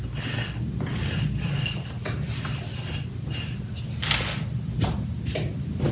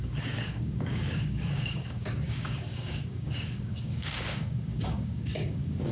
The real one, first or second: first